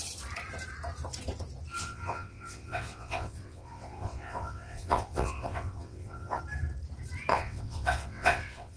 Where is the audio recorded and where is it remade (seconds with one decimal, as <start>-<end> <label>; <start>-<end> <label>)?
0.0-1.8 recorded; 1.8-6.4 remade; 6.4-7.3 recorded; 7.3-8.8 remade